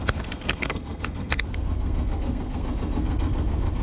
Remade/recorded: remade